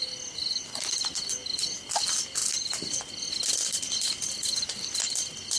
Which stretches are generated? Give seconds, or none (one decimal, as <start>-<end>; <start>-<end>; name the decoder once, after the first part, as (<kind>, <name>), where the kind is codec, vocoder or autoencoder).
2.4-3.0 (vocoder, BigVGAN v2)